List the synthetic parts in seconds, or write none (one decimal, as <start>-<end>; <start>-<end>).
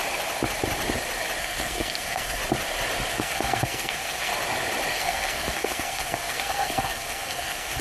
1.4-2.4; 3.1-4.3; 4.9-7.8